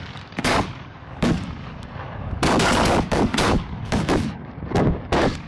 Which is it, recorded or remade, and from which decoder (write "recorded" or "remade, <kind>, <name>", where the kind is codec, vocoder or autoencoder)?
remade, codec, DAC